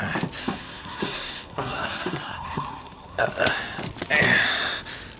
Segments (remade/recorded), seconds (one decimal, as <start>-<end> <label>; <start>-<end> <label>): 0.0-0.4 recorded; 0.4-3.3 remade; 3.3-5.2 recorded